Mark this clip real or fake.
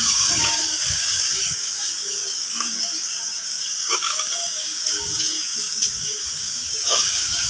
fake